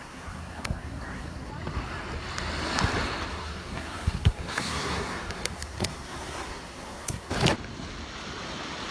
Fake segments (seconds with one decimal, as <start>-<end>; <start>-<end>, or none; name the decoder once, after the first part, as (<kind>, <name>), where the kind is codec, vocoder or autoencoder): 0.0-1.5 (codec, SNAC); 3.3-7.3